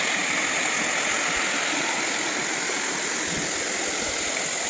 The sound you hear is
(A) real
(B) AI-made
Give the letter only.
A